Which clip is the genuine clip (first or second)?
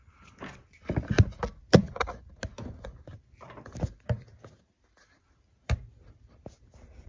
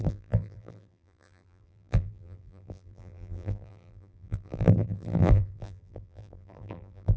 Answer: first